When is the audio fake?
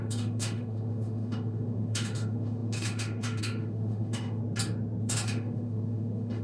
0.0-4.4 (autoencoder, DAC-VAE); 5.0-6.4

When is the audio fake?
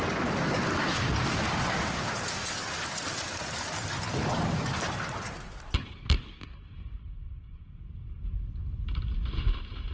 none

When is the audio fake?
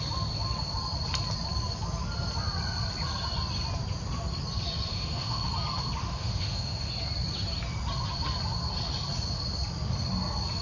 4.9-5.5 (autoencoder, DAC-VAE); 6.0-6.9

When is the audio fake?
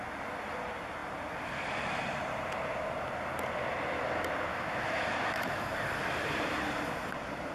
4.5-5.7 (autoencoder, DAC-VAE)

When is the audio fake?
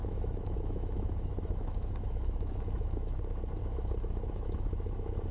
0.0-3.2 (autoencoder, DAC-VAE); 3.6-4.6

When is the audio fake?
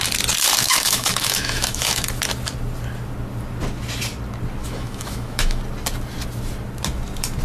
0.6-2.2 (autoencoder, DAC-VAE); 4.6-5.6